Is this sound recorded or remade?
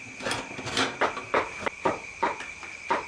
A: recorded